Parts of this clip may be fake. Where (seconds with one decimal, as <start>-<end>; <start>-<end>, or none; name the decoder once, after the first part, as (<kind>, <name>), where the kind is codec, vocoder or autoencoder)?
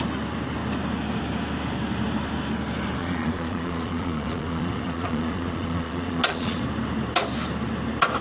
3.0-6.6 (vocoder, Vocos)